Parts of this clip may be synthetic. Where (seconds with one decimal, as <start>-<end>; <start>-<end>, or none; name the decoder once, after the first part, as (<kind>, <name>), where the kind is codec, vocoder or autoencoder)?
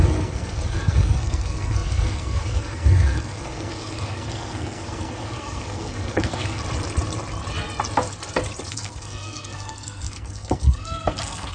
0.0-6.6 (codec, SNAC); 8.7-11.5